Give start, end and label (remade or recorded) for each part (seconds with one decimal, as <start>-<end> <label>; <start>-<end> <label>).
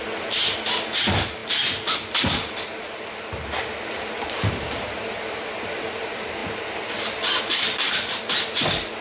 0.0-9.0 recorded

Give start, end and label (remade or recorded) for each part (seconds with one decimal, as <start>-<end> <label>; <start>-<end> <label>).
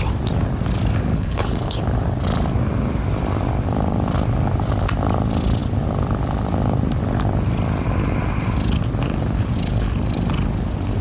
0.0-1.1 recorded; 1.1-1.8 remade; 1.8-11.0 recorded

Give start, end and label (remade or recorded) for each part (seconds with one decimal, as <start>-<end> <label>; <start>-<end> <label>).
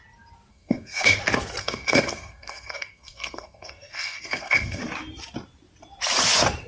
0.0-0.5 recorded; 0.5-1.2 remade; 1.2-1.6 recorded; 1.6-4.8 remade; 4.8-6.7 recorded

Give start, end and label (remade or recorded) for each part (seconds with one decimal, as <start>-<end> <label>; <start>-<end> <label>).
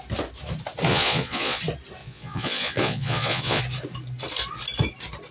0.0-0.9 recorded; 0.9-1.6 remade; 1.6-2.0 recorded; 2.0-3.6 remade; 3.6-5.3 recorded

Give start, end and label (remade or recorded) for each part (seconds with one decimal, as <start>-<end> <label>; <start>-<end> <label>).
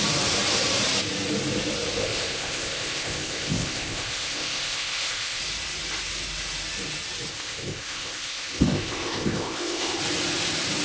0.0-2.0 recorded; 2.0-5.4 remade; 5.4-7.3 recorded; 7.3-10.0 remade; 10.0-10.8 recorded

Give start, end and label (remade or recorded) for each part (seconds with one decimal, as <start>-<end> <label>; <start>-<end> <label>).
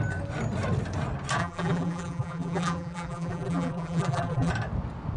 0.0-1.4 recorded; 1.4-4.5 remade; 4.5-5.2 recorded